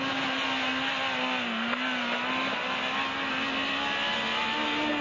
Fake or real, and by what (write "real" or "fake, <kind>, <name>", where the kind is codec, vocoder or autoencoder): real